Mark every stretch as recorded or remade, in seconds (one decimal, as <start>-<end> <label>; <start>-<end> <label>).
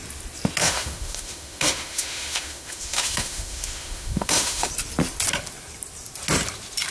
0.0-0.6 recorded; 0.6-4.7 remade; 4.7-6.9 recorded